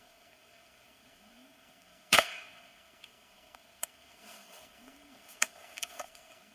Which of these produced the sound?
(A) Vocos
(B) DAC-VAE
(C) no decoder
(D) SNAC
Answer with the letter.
D